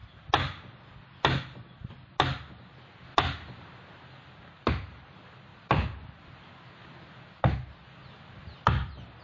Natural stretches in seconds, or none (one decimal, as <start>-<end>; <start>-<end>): 0.0-9.2